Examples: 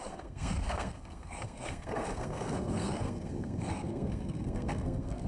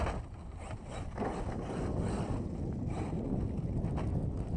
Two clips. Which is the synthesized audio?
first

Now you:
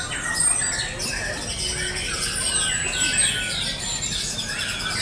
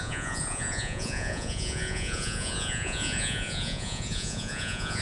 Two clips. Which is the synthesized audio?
second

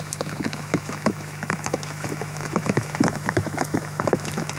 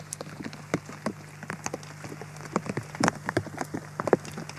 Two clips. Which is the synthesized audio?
first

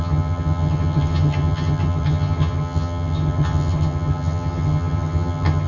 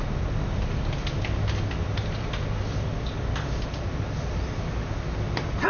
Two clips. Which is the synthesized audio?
first